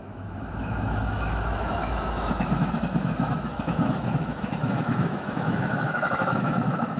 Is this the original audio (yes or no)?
no